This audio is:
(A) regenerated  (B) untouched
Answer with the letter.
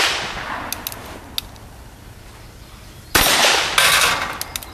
B